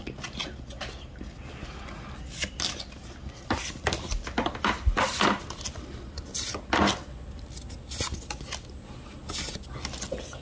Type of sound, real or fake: real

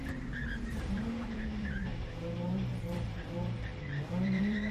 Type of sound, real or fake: fake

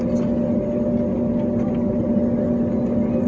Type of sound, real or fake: real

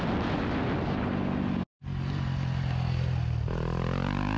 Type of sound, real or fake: real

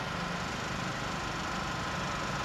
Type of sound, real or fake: real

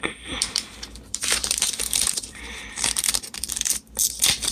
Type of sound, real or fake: fake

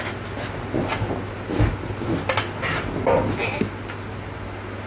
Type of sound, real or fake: real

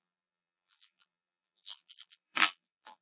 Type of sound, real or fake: fake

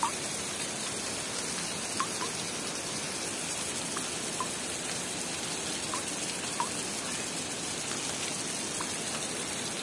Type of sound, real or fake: real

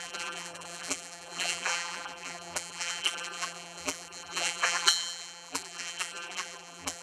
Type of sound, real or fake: fake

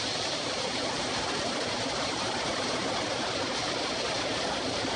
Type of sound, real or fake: fake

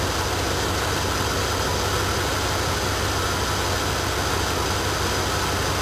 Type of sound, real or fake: real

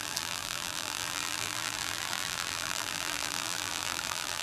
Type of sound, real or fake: fake